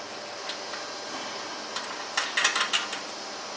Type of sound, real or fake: real